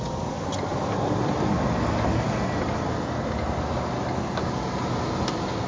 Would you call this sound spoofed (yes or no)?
no